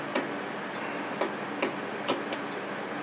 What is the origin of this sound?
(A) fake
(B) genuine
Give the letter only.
B